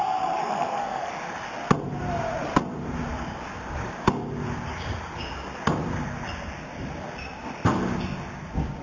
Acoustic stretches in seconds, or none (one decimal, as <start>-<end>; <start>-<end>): 0.0-0.4; 1.1-8.8